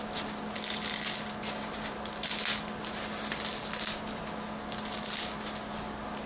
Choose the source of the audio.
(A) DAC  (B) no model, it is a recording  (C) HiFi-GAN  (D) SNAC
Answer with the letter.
B